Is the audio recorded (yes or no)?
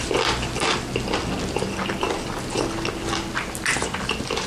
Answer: yes